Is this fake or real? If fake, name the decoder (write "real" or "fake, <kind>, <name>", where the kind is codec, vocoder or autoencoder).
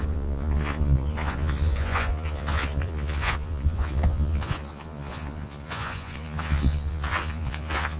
fake, vocoder, Vocos